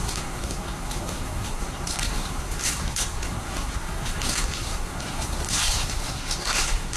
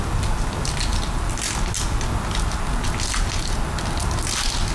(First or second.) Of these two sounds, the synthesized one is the first